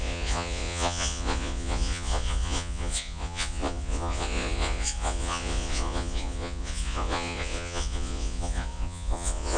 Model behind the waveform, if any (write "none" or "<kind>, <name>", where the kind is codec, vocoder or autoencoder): vocoder, Vocos